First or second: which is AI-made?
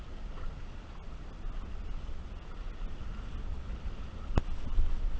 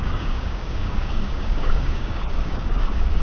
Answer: second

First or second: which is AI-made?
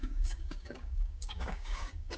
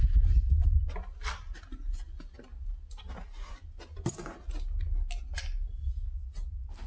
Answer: first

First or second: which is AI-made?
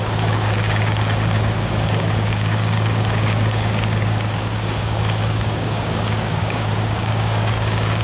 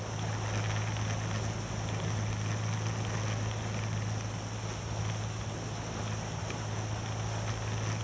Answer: first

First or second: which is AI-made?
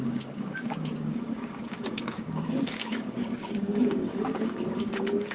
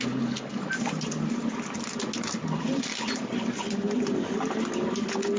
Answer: first